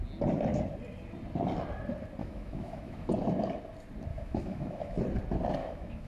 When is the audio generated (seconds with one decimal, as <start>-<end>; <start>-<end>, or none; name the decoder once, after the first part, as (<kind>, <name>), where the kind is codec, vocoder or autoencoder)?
2.2-3.1 (autoencoder, DAC-VAE); 4.1-5.0; 5.6-6.1